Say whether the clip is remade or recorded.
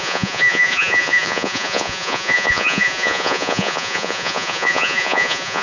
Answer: remade